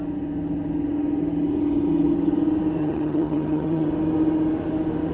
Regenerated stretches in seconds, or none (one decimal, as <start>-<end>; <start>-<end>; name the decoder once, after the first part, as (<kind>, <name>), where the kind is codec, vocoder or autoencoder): 2.8-3.9 (vocoder, HiFi-GAN)